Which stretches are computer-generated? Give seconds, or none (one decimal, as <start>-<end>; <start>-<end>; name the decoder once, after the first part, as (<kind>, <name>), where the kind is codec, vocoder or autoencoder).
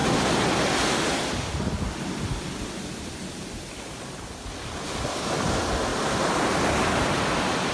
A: none